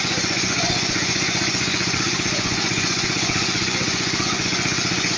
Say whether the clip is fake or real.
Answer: fake